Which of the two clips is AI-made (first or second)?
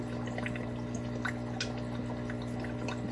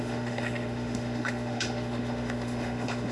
second